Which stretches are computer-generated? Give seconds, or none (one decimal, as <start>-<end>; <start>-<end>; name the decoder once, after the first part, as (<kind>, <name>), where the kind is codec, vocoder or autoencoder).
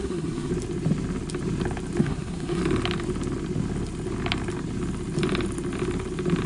0.0-0.5 (codec, SNAC); 2.0-2.6